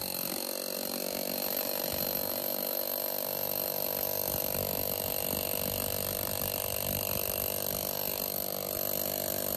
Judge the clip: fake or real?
real